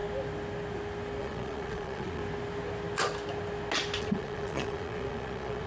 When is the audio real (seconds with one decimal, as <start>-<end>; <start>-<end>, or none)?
0.0-1.2; 2.2-4.0